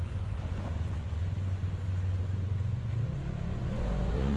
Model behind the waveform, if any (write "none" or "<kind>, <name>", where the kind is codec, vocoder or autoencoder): vocoder, Vocos